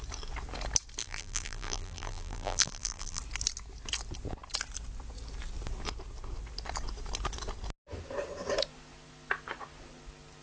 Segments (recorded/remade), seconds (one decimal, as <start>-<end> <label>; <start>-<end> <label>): 0.0-1.0 recorded; 1.0-3.2 remade; 3.2-10.4 recorded